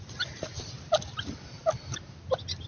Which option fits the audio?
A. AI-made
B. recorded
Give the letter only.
B